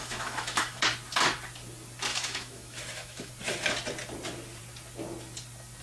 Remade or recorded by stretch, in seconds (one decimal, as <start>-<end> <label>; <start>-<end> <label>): 0.0-0.8 remade; 0.8-2.1 recorded; 2.1-3.3 remade; 3.3-5.8 recorded